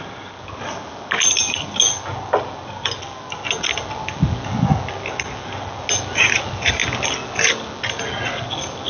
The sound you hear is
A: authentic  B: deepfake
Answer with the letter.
A